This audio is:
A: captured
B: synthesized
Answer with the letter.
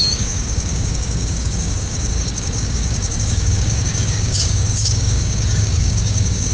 B